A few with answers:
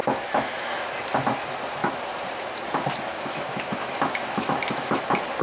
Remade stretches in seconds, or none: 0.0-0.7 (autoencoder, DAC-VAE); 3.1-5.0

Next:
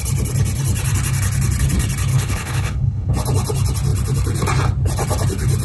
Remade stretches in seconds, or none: 2.1-3.1 (codec, HILCodec)

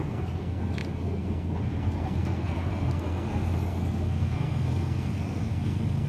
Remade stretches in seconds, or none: 0.0-6.1 (codec, SNAC)